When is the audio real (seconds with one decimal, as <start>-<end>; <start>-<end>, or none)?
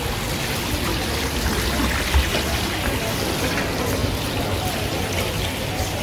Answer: 0.0-6.0